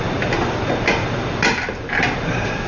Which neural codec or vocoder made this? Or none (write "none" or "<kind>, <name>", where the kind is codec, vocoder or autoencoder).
none